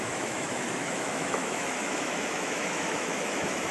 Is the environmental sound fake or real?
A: fake